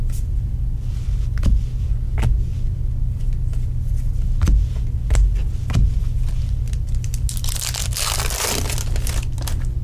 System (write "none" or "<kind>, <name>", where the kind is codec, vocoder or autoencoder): none